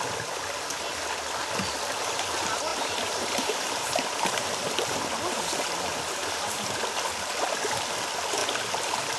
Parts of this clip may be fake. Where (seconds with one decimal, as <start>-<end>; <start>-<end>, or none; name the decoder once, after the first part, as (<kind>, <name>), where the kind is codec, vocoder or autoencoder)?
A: 2.7-6.7 (vocoder, BigVGAN v2)